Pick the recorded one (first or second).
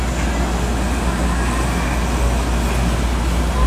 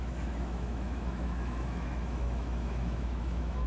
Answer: first